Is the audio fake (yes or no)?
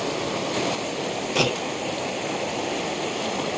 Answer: no